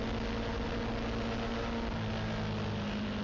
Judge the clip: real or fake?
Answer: real